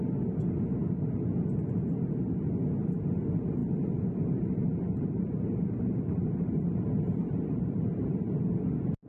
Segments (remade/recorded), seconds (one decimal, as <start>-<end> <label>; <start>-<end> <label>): 0.0-3.6 recorded; 3.6-8.3 remade; 8.3-9.1 recorded